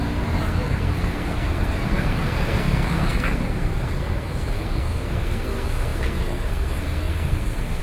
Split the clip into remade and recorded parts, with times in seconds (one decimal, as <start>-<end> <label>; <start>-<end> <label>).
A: 0.0-7.8 remade